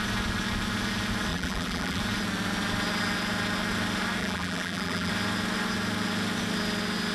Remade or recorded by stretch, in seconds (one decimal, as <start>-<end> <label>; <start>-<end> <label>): 0.0-1.3 recorded; 1.3-2.0 remade; 2.0-4.2 recorded; 4.2-5.1 remade; 5.1-7.1 recorded